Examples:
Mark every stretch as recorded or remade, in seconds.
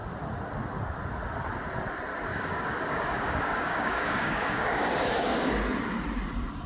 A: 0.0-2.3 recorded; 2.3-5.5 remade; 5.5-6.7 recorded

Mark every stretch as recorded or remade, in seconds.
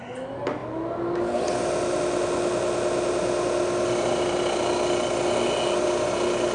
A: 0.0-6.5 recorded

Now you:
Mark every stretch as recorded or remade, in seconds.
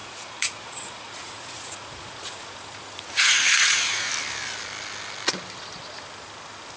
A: 0.0-4.1 remade; 4.1-6.8 recorded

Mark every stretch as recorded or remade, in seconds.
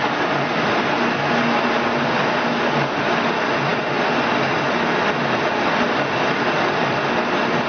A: 0.0-7.7 recorded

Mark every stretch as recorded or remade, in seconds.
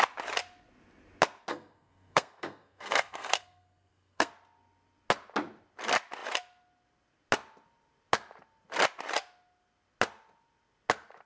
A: 0.0-1.5 recorded; 1.5-4.3 remade; 4.3-11.3 recorded